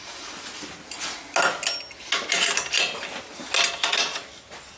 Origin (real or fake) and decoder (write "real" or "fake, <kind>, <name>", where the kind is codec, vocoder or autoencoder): real